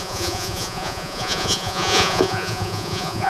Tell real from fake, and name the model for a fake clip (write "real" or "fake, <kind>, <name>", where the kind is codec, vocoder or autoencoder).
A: fake, vocoder, Vocos